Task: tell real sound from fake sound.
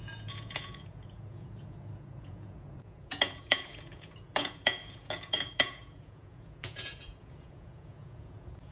fake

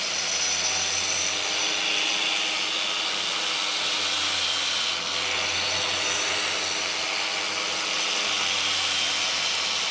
real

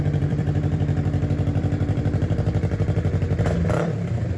fake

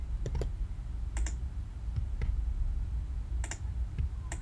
real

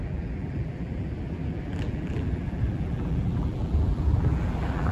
fake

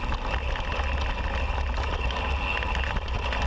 real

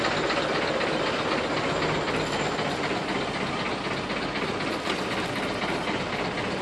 real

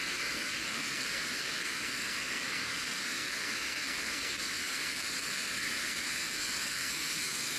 fake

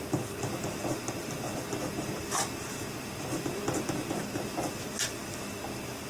real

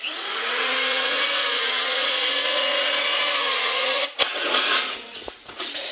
fake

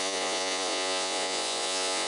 fake